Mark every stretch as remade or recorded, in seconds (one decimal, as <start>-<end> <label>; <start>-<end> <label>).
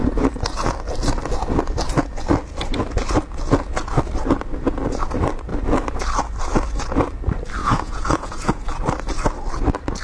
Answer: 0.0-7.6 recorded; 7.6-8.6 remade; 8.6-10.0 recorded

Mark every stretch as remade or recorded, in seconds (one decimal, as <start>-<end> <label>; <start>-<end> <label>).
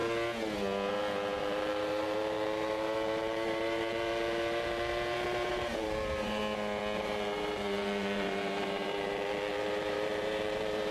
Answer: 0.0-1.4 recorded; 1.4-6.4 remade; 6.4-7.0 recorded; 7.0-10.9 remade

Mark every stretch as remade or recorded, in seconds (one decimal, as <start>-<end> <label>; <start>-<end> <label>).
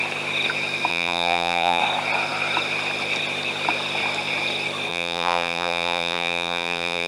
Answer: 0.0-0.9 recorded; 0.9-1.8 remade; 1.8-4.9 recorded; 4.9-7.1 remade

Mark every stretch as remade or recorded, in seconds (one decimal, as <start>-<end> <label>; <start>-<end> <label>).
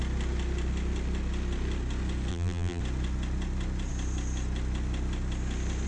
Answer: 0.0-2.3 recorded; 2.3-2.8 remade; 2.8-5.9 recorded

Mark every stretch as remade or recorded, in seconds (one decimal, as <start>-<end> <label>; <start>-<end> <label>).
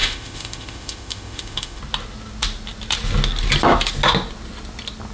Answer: 0.0-1.8 remade; 1.8-5.1 recorded